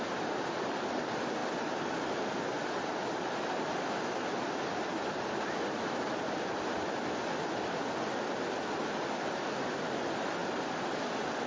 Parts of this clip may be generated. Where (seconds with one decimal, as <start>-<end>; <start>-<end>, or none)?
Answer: none